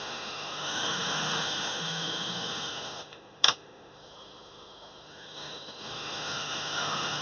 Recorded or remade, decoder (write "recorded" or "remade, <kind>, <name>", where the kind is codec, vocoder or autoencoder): remade, autoencoder, DAC-VAE